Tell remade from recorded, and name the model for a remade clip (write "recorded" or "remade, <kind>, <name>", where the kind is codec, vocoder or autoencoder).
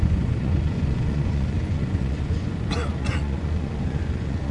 remade, vocoder, Vocos